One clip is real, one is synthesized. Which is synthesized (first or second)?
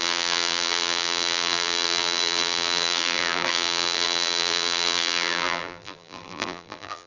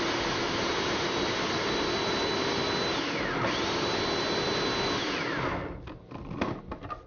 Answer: first